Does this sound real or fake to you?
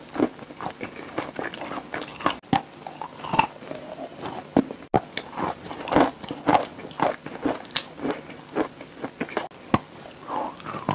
real